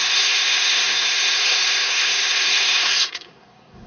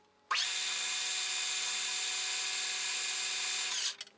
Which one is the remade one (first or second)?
first